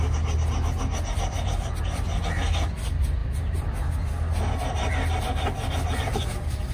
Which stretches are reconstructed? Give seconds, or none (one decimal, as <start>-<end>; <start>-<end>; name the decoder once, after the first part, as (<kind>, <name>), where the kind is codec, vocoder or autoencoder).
none